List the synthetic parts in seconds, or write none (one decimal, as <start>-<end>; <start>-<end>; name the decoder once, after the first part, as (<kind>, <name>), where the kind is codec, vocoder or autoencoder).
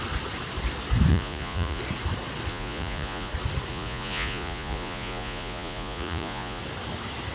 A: 1.1-1.8 (vocoder, Vocos); 2.5-3.3; 3.7-6.6